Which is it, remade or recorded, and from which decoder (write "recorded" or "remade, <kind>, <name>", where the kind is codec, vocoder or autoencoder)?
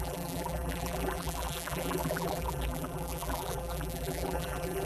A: remade, vocoder, BigVGAN v2